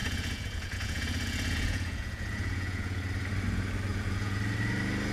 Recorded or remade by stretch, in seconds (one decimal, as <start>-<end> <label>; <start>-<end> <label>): 0.0-3.0 remade; 3.0-3.9 recorded; 3.9-4.4 remade; 4.4-5.1 recorded